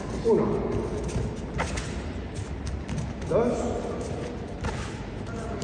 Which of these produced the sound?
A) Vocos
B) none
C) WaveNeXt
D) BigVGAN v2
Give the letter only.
B